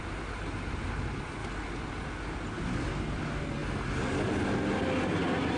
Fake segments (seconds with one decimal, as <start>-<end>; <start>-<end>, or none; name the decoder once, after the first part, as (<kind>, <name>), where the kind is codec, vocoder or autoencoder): none